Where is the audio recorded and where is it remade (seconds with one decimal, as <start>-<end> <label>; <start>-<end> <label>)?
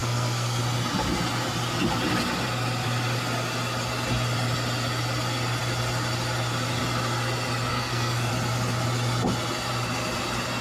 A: 0.0-0.6 remade; 0.6-7.7 recorded; 7.7-8.3 remade; 8.3-10.6 recorded